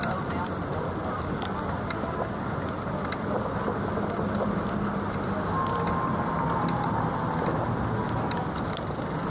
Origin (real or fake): real